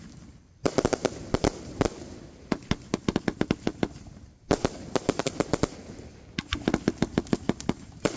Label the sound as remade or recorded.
recorded